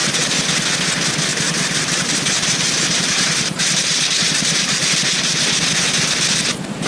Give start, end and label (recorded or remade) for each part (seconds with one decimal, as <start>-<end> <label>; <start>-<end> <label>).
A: 0.0-1.3 recorded; 1.3-5.4 remade; 5.4-6.9 recorded